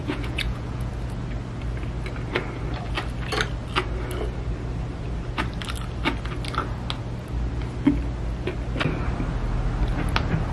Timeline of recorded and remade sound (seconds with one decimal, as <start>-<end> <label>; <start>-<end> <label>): 0.0-0.9 remade; 0.9-10.5 recorded